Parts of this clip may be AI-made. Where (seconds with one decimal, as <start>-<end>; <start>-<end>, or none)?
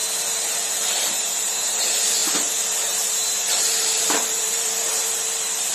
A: 0.0-5.7